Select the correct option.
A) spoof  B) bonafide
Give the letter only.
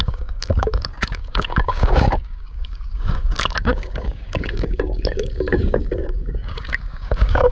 A